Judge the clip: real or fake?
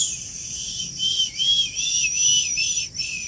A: real